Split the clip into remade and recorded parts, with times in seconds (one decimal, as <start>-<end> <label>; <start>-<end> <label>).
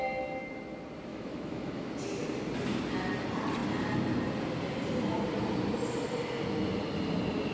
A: 0.0-1.1 recorded; 1.1-1.9 remade; 1.9-7.5 recorded